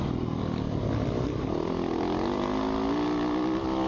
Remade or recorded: recorded